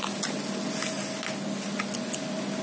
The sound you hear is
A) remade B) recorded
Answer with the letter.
B